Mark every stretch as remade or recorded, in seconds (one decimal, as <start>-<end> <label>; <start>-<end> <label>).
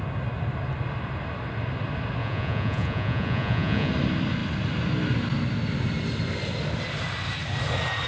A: 0.0-2.2 recorded; 2.2-3.9 remade; 3.9-8.1 recorded